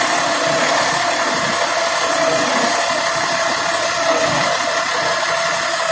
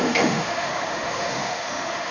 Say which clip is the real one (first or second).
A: first